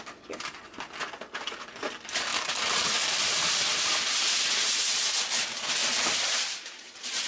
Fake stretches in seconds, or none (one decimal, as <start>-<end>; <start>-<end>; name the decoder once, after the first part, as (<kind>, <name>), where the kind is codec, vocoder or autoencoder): 5.8-7.3 (vocoder, BigVGAN v2)